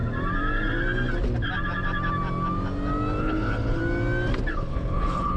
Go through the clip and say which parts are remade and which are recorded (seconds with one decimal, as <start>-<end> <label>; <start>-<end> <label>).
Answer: 0.0-3.2 recorded; 3.2-3.8 remade; 3.8-4.5 recorded; 4.5-5.4 remade

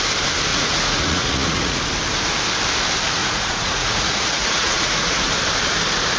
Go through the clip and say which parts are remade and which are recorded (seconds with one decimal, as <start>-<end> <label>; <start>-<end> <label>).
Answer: 0.0-0.5 recorded; 0.5-1.8 remade; 1.8-3.2 recorded; 3.2-5.3 remade; 5.3-6.2 recorded

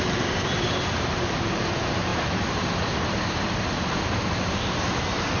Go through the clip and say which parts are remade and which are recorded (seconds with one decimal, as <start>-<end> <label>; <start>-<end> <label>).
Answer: 0.0-5.4 remade

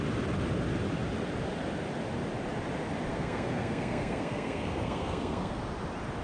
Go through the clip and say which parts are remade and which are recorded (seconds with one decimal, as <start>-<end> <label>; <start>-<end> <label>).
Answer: 0.0-3.1 recorded; 3.1-5.6 remade; 5.6-6.2 recorded